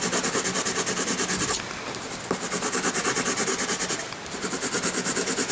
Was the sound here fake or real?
real